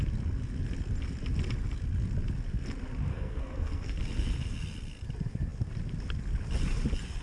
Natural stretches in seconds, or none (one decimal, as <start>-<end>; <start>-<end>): 0.0-3.1; 4.0-7.2